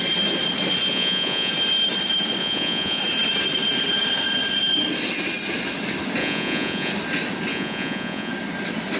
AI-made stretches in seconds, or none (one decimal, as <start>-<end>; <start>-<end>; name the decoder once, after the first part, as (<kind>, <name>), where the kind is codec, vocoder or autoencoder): 0.9-1.5 (vocoder, Vocos); 2.4-3.0; 6.2-6.9; 7.5-8.3